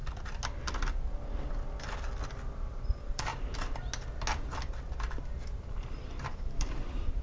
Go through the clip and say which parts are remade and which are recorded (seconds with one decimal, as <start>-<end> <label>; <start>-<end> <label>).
0.0-2.9 recorded; 2.9-3.3 remade; 3.3-5.6 recorded; 5.6-7.2 remade

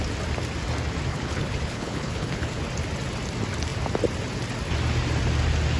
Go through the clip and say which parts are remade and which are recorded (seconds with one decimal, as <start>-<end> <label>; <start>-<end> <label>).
0.0-1.1 recorded; 1.1-2.6 remade; 2.6-5.8 recorded